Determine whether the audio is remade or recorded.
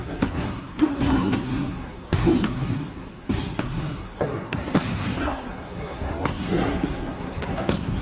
remade